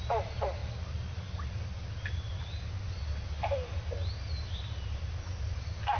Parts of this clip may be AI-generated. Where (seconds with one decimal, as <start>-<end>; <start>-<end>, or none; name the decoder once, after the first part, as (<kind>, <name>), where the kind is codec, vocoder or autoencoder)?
none